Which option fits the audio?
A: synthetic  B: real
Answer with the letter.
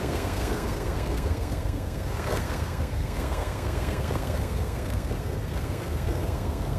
A